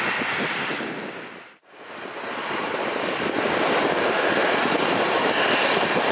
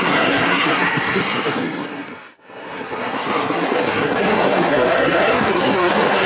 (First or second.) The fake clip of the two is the second